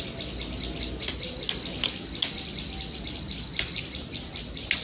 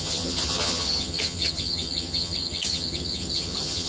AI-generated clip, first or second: second